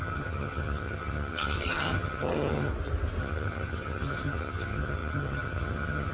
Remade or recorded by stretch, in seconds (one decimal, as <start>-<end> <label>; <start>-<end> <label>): 0.0-2.7 remade; 2.7-3.2 recorded; 3.2-6.1 remade